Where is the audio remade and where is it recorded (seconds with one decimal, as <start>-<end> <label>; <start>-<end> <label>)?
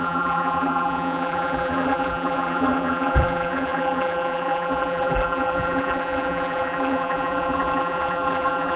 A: 0.0-8.8 remade